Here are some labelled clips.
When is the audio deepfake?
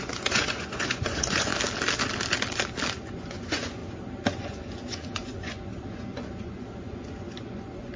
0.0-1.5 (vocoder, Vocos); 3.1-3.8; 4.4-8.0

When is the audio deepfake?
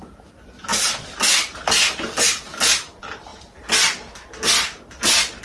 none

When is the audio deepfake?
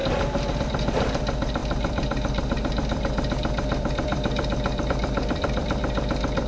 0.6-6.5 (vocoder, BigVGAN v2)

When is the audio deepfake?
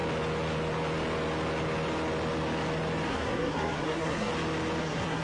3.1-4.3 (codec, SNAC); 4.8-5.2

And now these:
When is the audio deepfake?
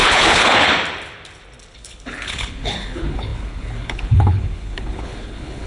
0.0-0.7 (codec, HILCodec); 1.7-5.7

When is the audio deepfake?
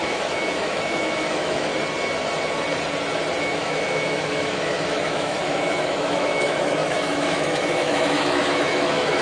0.0-1.7 (autoencoder, DAC-VAE); 3.4-9.2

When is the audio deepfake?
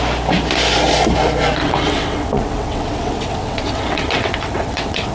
1.6-5.1 (vocoder, WaveNeXt)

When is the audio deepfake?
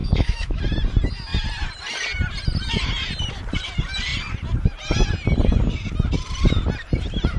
0.0-0.6 (autoencoder, DAC-VAE)